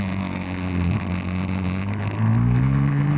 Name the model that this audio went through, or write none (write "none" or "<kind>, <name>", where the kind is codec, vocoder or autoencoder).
none